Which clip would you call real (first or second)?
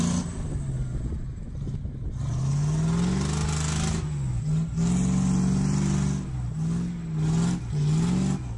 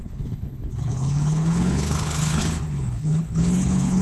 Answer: first